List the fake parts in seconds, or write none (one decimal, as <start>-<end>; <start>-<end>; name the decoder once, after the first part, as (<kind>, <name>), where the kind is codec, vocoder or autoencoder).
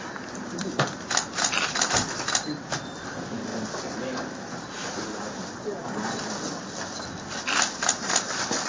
0.0-3.5 (vocoder, BigVGAN v2); 4.6-8.7